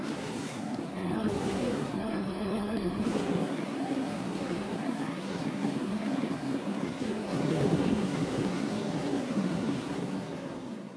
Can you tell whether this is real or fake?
fake